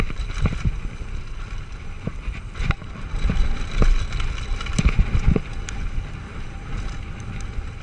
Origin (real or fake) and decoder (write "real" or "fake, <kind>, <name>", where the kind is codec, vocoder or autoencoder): real